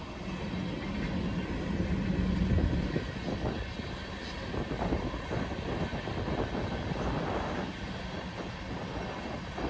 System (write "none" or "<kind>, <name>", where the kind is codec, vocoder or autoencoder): none